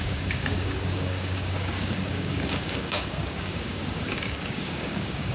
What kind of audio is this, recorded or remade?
remade